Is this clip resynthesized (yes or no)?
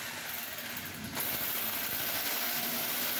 no